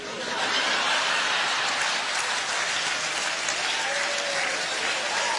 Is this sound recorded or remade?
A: recorded